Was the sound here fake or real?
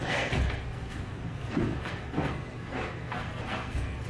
fake